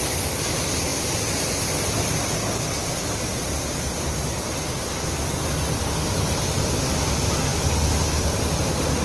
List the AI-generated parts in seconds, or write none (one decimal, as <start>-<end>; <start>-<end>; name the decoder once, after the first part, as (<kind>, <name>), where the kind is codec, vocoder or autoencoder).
7.5-8.5 (vocoder, BigVGAN v2)